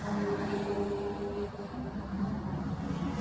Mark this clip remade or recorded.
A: recorded